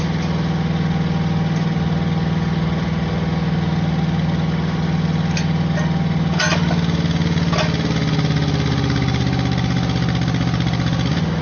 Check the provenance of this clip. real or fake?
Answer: real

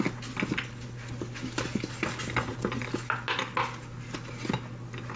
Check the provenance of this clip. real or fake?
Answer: real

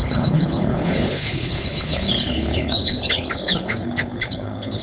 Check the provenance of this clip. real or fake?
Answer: fake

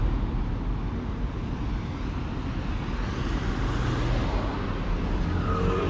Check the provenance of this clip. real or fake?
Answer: real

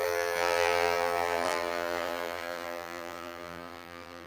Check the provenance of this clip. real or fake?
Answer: fake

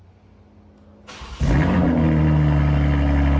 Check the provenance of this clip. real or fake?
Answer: real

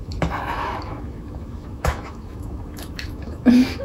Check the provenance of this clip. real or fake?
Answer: fake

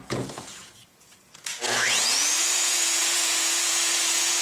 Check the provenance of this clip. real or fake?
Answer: fake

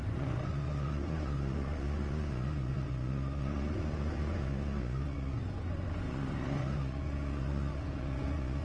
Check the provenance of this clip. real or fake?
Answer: fake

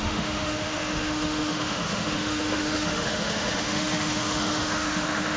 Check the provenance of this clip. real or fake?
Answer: fake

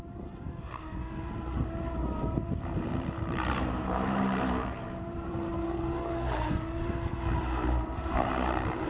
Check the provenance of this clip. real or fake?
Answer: fake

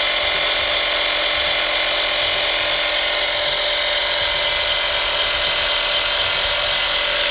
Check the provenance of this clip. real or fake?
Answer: real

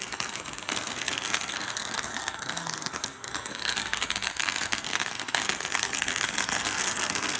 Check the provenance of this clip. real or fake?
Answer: fake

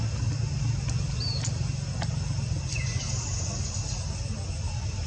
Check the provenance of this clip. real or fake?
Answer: real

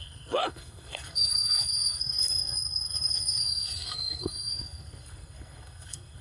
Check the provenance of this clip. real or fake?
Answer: fake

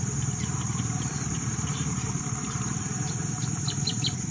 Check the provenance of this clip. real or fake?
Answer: fake